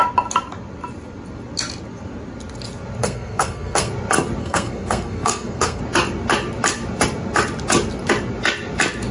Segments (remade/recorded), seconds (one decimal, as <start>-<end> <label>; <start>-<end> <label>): 0.0-3.0 recorded; 3.0-3.9 remade; 3.9-4.4 recorded; 4.4-5.8 remade; 5.8-9.1 recorded